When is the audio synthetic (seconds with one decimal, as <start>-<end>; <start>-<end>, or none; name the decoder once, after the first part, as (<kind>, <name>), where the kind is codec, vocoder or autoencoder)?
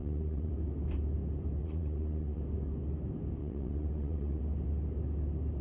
0.0-0.5 (vocoder, WaveNeXt); 1.6-2.4; 3.4-4.4